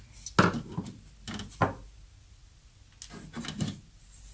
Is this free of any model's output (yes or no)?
yes